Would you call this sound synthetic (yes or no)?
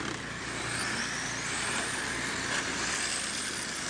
no